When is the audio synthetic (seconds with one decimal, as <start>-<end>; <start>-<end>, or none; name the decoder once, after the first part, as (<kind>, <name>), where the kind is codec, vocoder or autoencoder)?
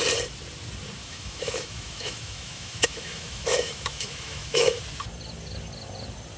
1.0-4.8 (autoencoder, DAC-VAE)